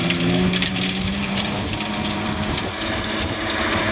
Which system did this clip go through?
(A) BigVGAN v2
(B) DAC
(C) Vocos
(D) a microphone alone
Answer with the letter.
A